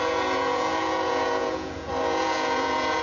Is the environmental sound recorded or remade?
remade